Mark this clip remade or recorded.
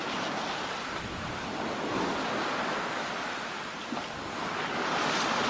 recorded